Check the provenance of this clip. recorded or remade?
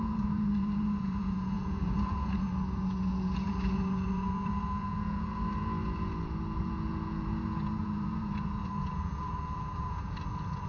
remade